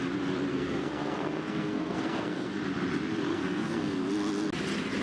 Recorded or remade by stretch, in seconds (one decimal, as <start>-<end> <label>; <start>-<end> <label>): 0.0-0.5 recorded; 0.5-2.6 remade; 2.6-3.3 recorded; 3.3-4.1 remade; 4.1-5.0 recorded